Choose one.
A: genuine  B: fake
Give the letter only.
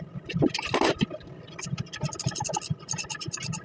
A